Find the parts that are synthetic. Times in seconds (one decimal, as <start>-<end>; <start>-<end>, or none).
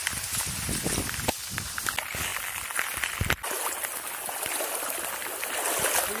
none